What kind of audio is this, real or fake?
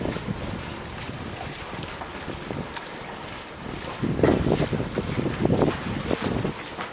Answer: real